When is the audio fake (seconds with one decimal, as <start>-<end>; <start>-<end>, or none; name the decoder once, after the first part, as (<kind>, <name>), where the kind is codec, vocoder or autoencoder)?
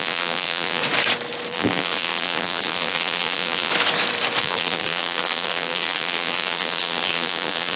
0.0-0.8 (vocoder, BigVGAN v2); 1.5-3.7; 4.4-7.8